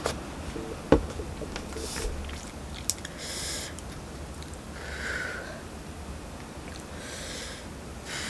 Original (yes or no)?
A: yes